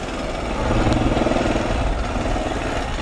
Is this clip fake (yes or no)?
no